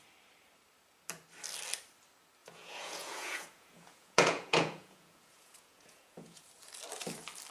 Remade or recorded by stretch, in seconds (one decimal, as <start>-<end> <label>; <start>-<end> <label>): 0.0-2.4 recorded; 2.4-6.4 remade; 6.4-7.5 recorded